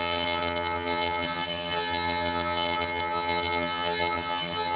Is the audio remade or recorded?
remade